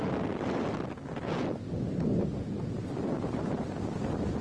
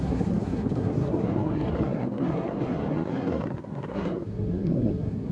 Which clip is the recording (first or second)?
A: first